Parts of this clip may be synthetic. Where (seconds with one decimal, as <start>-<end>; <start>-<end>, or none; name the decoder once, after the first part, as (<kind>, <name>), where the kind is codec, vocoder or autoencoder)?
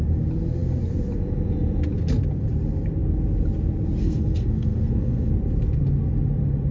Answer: 4.0-5.3 (codec, SNAC)